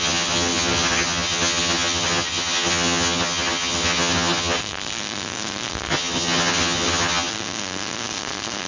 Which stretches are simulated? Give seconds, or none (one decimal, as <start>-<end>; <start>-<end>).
0.0-4.6; 5.9-7.3